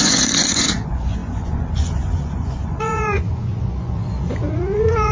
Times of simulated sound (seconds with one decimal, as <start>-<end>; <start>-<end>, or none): 0.0-5.1